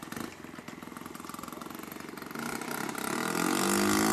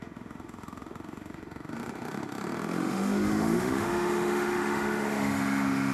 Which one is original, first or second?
first